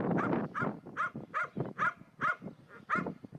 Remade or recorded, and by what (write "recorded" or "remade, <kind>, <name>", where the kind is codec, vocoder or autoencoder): recorded